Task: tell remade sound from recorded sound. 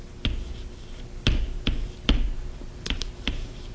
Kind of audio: recorded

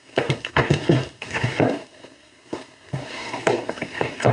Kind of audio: remade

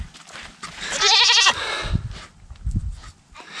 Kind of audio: recorded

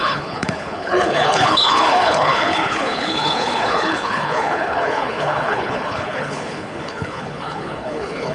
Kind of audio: remade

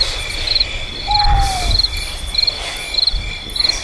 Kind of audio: remade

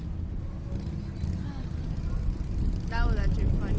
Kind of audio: recorded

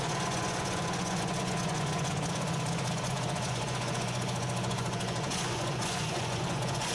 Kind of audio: remade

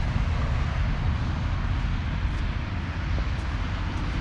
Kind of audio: recorded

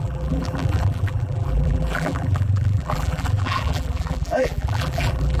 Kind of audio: remade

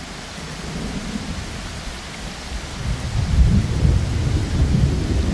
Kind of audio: recorded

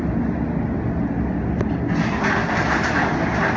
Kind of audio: recorded